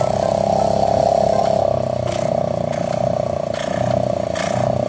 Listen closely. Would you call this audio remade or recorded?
recorded